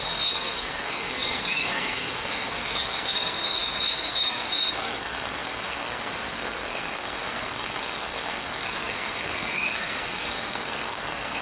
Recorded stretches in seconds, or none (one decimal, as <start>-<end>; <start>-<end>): none